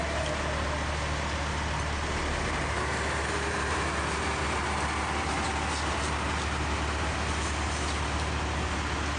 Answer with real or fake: real